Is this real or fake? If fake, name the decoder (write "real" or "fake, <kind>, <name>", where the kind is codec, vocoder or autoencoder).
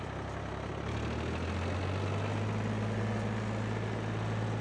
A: real